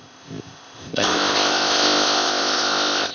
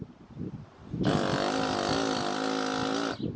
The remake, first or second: first